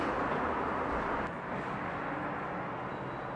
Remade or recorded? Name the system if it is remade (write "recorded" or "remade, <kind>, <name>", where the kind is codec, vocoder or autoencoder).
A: recorded